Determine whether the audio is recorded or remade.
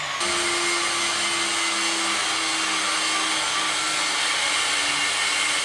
recorded